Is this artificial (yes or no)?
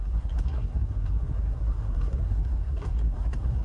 yes